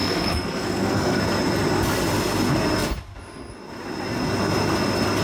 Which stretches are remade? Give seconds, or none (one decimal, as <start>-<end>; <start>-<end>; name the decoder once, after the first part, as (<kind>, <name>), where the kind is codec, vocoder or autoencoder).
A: 0.0-1.2 (codec, SNAC)

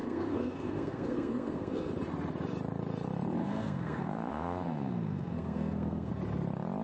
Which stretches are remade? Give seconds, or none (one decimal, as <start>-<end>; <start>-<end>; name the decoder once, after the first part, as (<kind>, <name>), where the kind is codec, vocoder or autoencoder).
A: 0.0-1.9 (codec, SNAC); 3.4-6.1

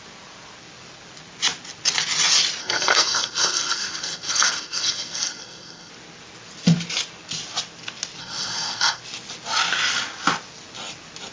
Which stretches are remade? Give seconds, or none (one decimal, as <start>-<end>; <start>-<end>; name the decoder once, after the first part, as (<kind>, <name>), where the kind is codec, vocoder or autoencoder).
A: 2.6-5.9 (codec, SNAC); 8.2-9.0

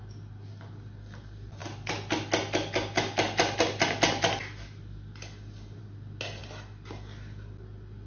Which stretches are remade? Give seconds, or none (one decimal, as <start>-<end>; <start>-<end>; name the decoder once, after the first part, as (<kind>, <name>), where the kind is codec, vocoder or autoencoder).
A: none

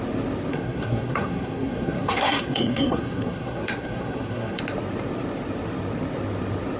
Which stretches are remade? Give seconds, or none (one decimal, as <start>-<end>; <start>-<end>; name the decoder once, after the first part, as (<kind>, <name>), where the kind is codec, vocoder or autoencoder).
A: 0.5-4.6 (codec, SNAC)

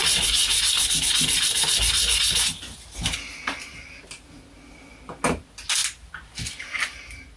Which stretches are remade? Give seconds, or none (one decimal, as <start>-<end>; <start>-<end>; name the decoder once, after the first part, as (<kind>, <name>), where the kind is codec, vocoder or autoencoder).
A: none

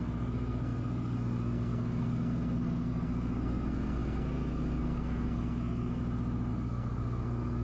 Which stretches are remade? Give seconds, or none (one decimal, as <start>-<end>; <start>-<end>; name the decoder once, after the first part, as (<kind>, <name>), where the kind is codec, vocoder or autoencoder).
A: 0.0-6.0 (codec, SNAC); 6.5-7.6

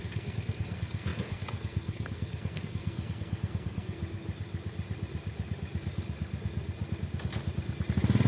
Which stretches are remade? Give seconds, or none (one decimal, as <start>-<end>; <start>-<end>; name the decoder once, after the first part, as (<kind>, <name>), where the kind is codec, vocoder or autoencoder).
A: 0.0-4.0 (codec, SNAC)